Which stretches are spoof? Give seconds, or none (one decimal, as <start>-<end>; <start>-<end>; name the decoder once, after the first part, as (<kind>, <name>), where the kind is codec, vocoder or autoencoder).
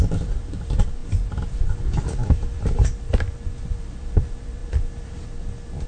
0.0-1.0 (vocoder, BigVGAN v2); 3.7-5.9